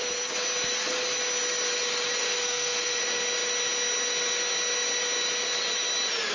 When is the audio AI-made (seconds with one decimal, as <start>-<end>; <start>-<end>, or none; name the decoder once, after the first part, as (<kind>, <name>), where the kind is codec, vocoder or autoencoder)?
2.2-3.0 (codec, SNAC)